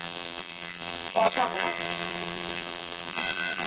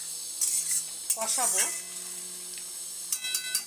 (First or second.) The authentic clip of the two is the second